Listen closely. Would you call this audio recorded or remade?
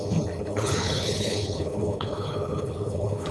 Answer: remade